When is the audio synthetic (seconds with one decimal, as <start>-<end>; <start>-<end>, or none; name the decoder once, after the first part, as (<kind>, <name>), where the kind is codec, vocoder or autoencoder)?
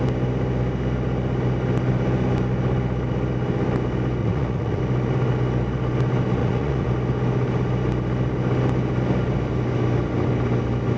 4.2-4.8 (vocoder, Vocos); 6.4-6.9